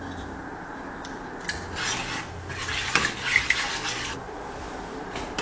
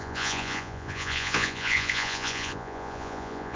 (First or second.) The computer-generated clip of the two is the second